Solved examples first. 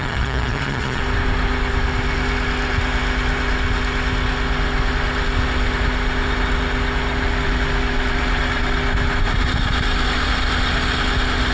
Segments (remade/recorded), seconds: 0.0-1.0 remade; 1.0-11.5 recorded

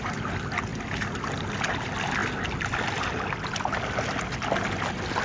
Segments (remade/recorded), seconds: 0.0-5.2 recorded

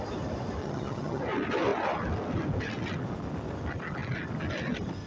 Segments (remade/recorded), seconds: 0.0-0.6 recorded; 0.6-1.2 remade; 1.2-5.1 recorded

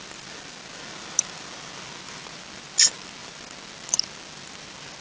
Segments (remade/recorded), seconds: 0.0-5.0 recorded